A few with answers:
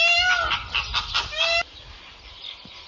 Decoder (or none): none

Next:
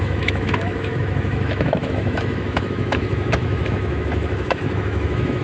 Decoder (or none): autoencoder, DAC-VAE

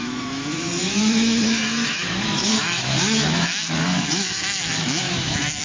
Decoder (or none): autoencoder, DAC-VAE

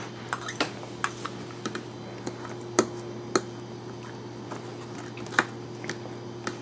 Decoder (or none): none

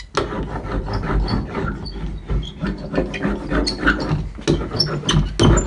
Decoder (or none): none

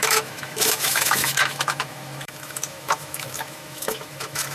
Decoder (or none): autoencoder, DAC-VAE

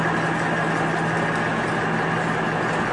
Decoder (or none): none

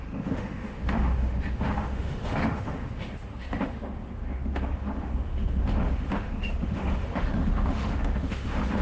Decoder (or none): autoencoder, DAC-VAE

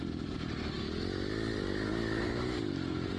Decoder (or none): none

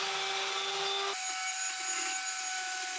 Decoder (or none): none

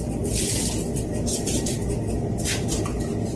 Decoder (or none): none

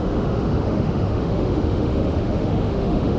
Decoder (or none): autoencoder, DAC-VAE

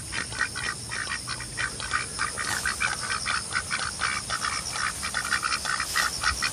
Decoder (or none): none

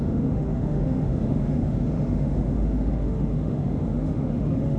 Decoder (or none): autoencoder, DAC-VAE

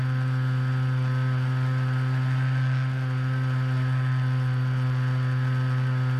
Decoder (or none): none